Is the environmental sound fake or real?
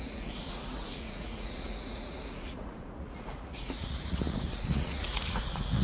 fake